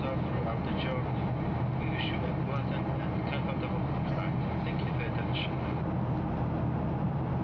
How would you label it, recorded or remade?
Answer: recorded